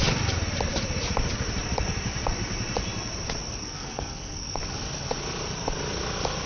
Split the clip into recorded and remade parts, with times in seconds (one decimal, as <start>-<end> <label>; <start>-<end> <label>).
0.0-3.6 recorded; 3.6-4.6 remade; 4.6-6.5 recorded